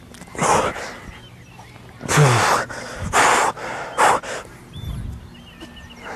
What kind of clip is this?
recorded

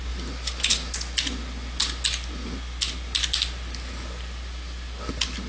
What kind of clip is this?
recorded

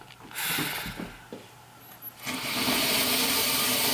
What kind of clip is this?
recorded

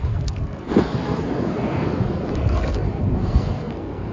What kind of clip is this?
remade